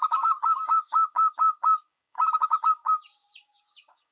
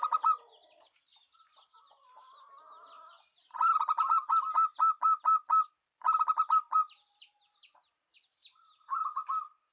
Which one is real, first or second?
second